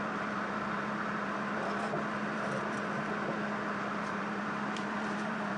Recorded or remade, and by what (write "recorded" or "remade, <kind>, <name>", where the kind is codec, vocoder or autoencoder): remade, vocoder, BigVGAN v2